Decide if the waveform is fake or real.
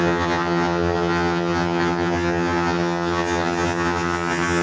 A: fake